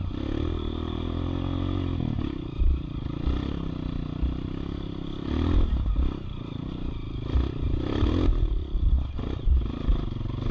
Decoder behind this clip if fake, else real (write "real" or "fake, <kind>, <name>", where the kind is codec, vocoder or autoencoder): real